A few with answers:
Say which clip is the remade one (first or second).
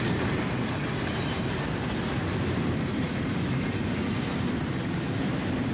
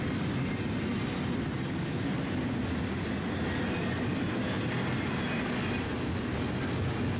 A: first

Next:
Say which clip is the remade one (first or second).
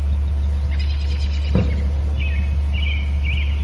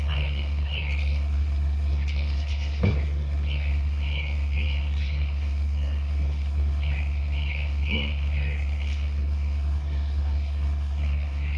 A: second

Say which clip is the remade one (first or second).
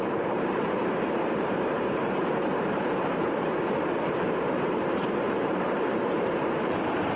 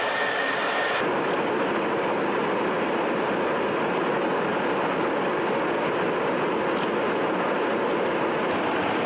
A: first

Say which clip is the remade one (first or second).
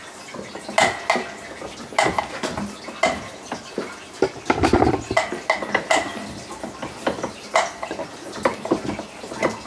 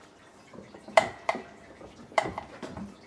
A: second